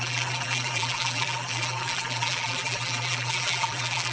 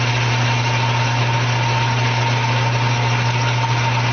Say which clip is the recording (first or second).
second